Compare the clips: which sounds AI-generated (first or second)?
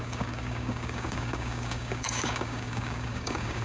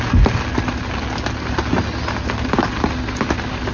first